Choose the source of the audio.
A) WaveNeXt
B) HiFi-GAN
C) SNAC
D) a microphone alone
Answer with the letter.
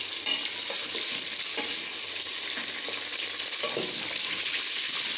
D